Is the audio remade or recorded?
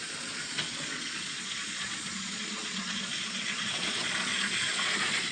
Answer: remade